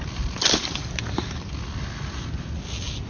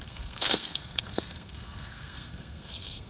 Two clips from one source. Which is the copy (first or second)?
second